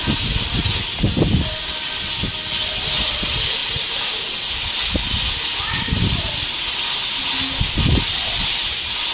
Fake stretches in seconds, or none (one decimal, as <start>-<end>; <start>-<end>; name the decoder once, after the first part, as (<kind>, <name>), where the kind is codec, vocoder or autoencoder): 3.6-4.8 (vocoder, BigVGAN v2); 5.5-6.4